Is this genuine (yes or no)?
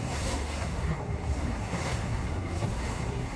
no